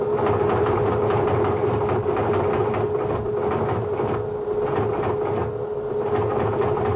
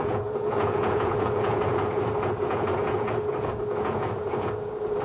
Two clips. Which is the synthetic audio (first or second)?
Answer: second